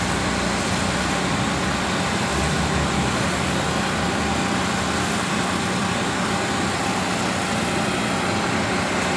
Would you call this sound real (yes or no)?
yes